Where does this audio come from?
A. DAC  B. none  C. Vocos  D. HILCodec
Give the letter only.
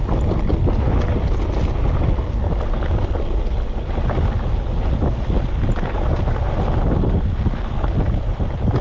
B